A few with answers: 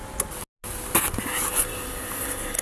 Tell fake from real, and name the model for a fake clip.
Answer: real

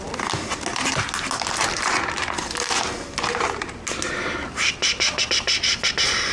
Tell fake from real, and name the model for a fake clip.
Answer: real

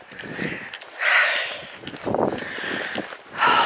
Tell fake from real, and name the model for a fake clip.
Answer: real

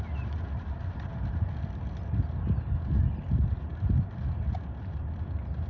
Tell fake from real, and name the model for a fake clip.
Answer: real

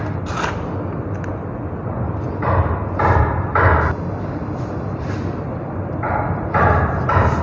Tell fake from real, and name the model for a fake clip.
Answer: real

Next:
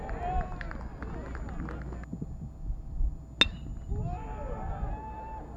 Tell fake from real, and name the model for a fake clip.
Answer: real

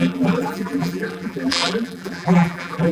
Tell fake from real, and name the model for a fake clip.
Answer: fake, vocoder, BigVGAN v2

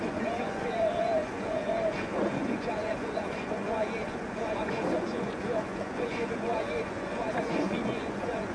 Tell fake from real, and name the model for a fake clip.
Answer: fake, vocoder, Vocos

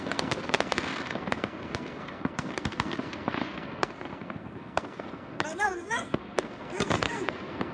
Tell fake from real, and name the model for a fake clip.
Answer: fake, codec, SNAC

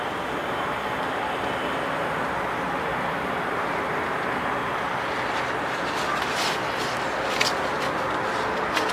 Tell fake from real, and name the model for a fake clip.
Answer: real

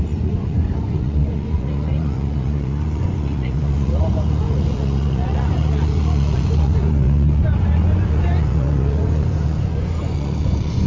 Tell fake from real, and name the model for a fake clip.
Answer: fake, vocoder, Vocos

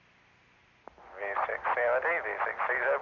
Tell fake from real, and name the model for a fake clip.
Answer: real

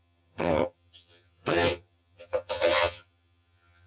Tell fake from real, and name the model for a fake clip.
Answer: fake, vocoder, HiFi-GAN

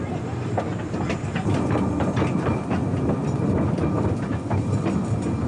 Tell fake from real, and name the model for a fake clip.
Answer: real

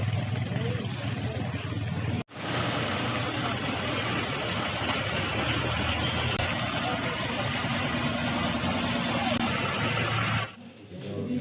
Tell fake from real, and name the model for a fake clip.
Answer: real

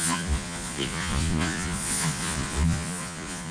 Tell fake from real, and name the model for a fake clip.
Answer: fake, vocoder, Vocos